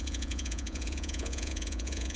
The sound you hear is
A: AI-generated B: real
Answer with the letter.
A